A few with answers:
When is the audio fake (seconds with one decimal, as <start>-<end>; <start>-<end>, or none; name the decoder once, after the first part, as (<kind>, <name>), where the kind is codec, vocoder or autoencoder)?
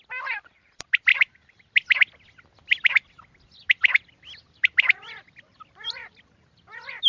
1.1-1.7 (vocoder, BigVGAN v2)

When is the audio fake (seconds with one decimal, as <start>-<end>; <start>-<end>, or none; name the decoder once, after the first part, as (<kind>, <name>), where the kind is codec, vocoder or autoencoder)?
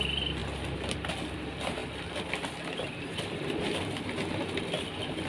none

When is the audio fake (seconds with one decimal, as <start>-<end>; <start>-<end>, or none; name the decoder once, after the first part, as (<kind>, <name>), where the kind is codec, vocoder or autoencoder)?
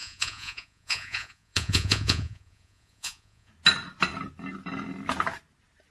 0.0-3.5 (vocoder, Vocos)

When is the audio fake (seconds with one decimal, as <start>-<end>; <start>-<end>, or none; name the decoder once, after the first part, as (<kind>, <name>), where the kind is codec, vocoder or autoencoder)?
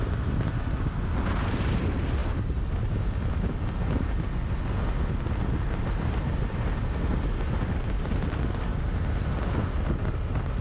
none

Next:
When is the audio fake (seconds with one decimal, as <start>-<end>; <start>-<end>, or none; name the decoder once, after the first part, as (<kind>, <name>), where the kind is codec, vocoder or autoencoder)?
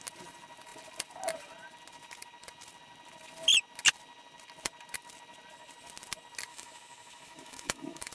6.5-8.1 (autoencoder, DAC-VAE)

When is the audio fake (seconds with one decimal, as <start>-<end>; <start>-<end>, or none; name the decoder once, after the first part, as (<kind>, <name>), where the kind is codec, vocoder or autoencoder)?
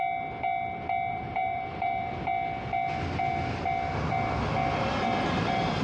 1.1-2.1 (vocoder, BigVGAN v2)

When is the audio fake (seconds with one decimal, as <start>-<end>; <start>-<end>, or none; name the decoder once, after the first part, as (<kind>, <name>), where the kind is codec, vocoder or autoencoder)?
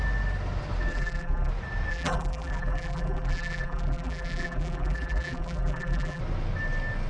0.9-1.5 (vocoder, BigVGAN v2); 1.9-6.2